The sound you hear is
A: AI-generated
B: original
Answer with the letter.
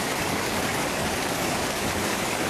A